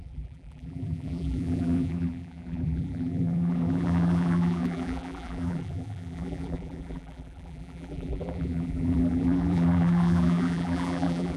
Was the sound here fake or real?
fake